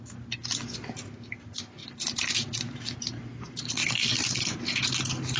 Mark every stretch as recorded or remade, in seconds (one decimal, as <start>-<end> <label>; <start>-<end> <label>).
0.0-5.4 recorded